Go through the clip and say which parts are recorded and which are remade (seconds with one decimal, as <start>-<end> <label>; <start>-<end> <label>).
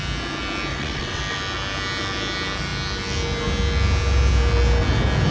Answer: 0.0-0.7 recorded; 0.7-1.2 remade; 1.2-5.3 recorded